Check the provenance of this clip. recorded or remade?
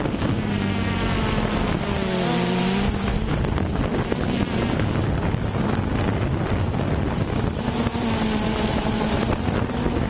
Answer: recorded